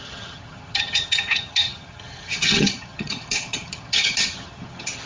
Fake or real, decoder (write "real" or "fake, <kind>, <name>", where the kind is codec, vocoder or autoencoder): fake, vocoder, HiFi-GAN